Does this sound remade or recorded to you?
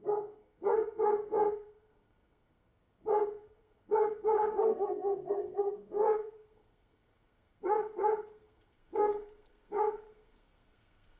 remade